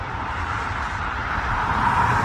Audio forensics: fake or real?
real